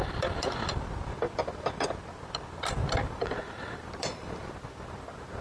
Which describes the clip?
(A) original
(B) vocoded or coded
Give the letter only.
B